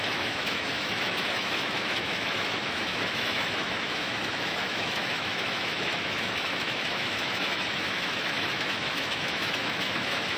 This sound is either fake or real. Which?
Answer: fake